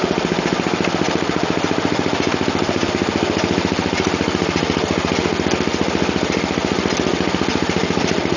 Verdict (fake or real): real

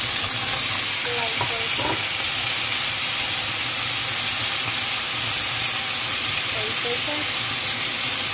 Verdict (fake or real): real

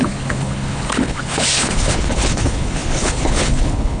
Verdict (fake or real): fake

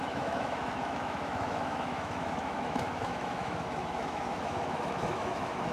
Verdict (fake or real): fake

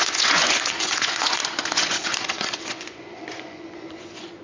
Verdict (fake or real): fake